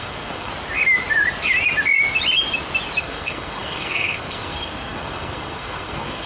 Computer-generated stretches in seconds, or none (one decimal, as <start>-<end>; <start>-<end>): 0.0-0.5; 3.0-6.3